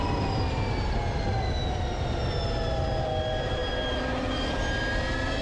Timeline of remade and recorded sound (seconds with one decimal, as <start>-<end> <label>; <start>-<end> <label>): 0.0-5.4 recorded